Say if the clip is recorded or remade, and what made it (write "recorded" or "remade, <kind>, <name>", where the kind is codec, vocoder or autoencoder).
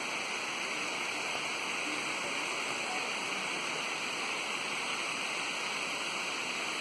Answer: recorded